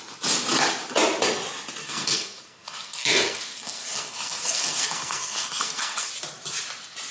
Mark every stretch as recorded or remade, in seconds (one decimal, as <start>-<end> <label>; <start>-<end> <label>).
0.0-1.8 recorded; 1.8-6.1 remade; 6.1-7.1 recorded